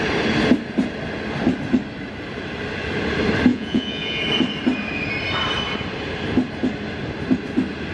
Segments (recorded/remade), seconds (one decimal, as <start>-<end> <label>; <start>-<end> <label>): 0.0-3.5 recorded; 3.5-4.2 remade; 4.2-7.9 recorded